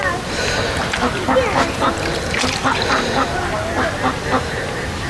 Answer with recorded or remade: recorded